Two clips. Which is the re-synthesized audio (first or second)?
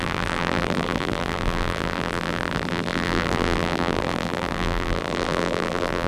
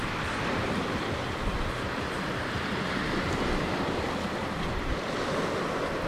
first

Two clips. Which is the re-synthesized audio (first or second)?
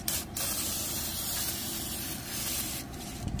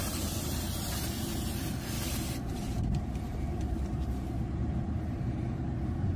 second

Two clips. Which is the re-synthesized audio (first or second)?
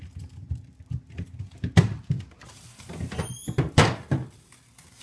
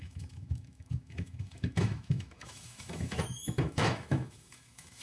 second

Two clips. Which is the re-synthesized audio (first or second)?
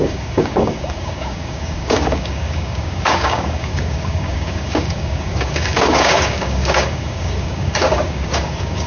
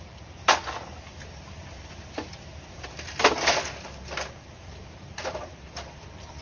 first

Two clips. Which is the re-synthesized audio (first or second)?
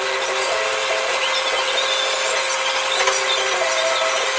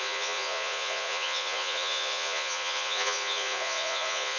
second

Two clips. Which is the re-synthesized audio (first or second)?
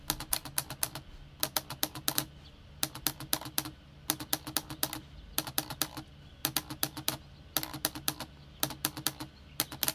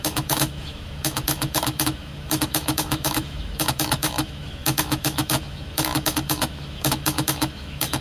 second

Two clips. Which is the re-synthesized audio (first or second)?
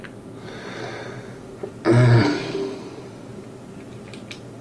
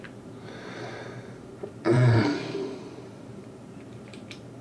second